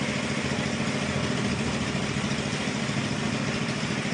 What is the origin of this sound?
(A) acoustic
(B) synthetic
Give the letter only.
A